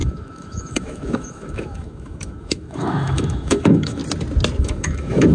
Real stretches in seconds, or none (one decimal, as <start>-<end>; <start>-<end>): 4.0-4.6